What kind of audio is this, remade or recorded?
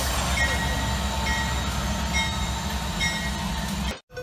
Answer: recorded